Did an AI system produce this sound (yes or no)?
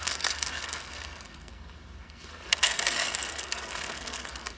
yes